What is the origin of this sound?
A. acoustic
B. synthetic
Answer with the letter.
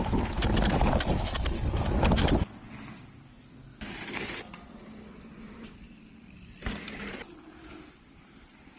A